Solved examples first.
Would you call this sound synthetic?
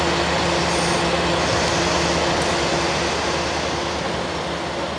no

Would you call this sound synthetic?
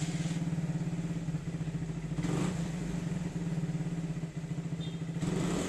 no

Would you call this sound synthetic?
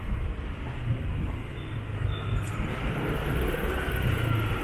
no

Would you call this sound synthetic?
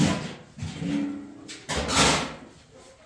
no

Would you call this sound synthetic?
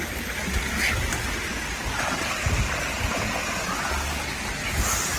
no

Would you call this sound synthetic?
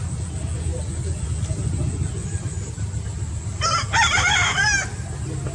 no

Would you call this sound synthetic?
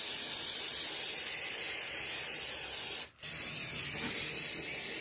no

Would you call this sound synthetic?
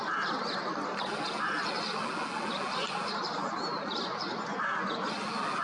no